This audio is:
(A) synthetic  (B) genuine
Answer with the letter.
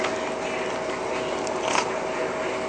B